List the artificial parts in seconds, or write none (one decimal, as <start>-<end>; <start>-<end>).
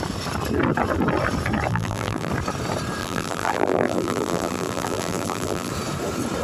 1.7-2.3; 3.0-5.7